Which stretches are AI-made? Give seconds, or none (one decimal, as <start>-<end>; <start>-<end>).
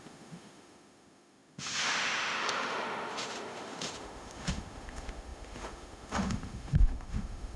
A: 0.0-7.6